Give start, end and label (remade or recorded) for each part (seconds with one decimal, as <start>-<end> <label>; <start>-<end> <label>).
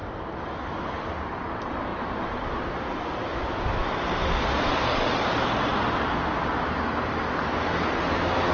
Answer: 0.0-8.5 recorded